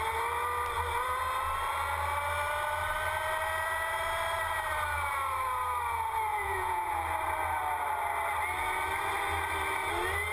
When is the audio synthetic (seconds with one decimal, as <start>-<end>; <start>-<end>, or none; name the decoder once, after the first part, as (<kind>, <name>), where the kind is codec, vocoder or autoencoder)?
6.3-6.9 (vocoder, Vocos)